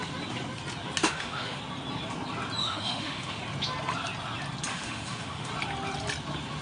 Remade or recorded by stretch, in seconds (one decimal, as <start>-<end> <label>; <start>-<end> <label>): 0.0-1.0 recorded; 1.0-1.6 remade; 1.6-2.6 recorded; 2.6-3.4 remade; 3.4-4.7 recorded; 4.7-5.5 remade; 5.5-6.6 recorded